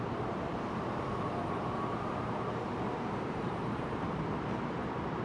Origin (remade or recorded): remade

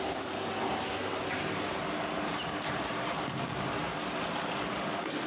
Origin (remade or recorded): recorded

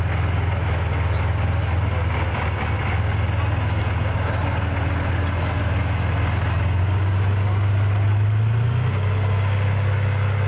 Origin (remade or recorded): recorded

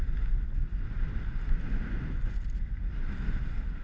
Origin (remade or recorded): recorded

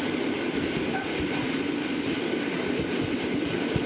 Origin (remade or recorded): recorded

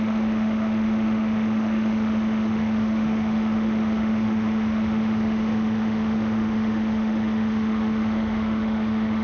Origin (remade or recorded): remade